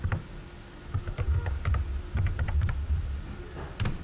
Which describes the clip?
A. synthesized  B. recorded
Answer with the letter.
B